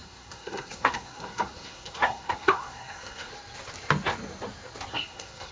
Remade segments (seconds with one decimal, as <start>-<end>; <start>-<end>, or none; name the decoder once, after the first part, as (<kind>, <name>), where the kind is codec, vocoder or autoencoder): 0.0-3.3 (codec, SNAC); 4.9-5.5